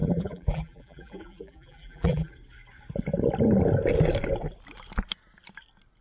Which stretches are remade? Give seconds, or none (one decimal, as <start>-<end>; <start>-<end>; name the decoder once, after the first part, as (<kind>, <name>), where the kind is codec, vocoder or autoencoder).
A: 0.0-2.3 (vocoder, BigVGAN v2)